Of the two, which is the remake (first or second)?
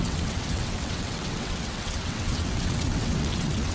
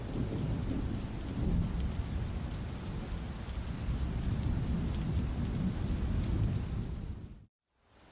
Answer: first